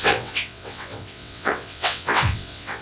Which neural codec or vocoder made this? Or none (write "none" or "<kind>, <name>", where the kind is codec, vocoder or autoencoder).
vocoder, WaveNeXt